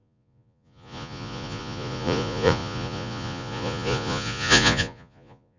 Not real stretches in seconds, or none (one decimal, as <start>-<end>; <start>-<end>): 0.0-5.6